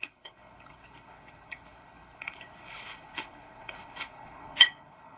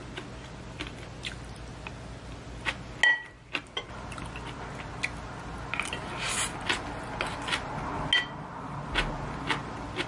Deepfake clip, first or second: first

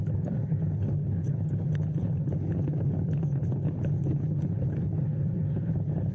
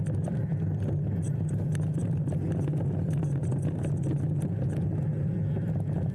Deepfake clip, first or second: first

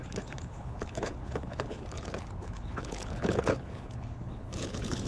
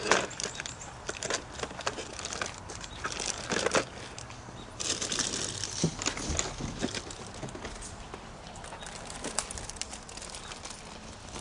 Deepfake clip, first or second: first